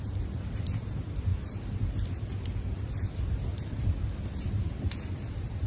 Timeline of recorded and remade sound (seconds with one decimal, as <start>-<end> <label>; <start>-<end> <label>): 0.0-5.7 recorded